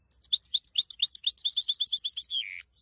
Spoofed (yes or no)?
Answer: no